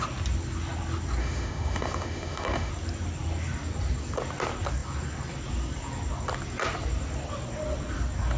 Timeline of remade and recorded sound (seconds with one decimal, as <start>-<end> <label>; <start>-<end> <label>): 0.0-1.2 recorded; 1.2-2.7 remade; 2.7-8.4 recorded